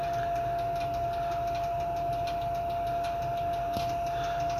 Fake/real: real